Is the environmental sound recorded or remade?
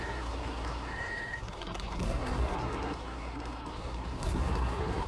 remade